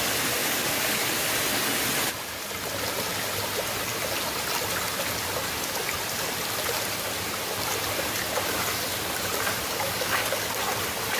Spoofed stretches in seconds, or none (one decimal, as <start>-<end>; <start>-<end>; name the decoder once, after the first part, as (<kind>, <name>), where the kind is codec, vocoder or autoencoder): 0.4-1.1 (codec, DAC); 9.7-10.5